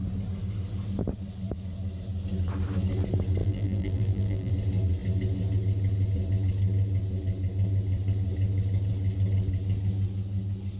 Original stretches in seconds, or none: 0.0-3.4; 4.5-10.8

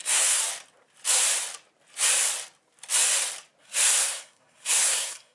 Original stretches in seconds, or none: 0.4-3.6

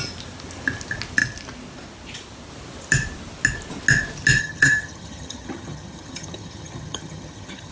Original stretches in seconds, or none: 0.0-4.4